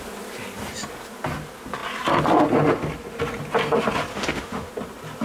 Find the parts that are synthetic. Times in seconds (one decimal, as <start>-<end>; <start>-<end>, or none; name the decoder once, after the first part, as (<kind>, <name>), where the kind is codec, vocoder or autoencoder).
4.1-4.7 (autoencoder, DAC-VAE)